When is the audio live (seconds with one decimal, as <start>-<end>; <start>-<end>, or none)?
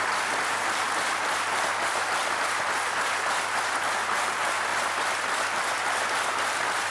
0.0-6.9